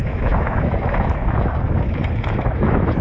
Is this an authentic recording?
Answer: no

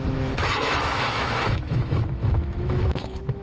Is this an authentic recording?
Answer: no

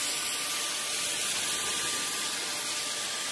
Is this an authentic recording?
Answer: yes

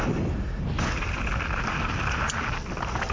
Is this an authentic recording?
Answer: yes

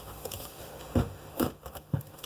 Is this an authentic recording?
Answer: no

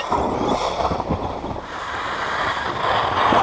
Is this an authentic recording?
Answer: yes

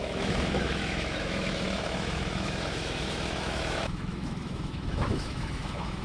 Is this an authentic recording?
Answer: no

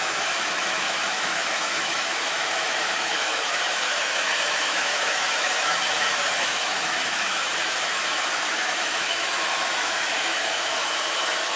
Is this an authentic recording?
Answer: no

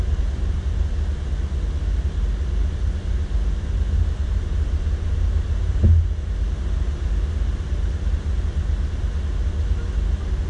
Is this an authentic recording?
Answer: yes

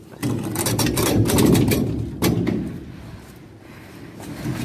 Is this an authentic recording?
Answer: yes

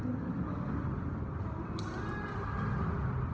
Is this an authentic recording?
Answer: yes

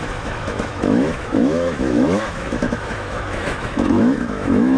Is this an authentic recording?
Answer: no